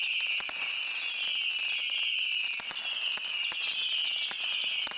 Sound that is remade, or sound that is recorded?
recorded